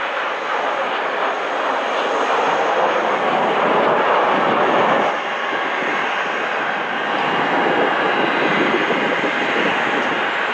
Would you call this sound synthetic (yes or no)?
no